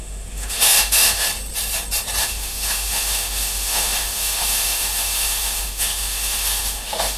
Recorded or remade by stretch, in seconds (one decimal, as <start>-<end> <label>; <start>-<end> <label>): 0.0-1.3 remade; 1.3-2.2 recorded; 2.2-7.2 remade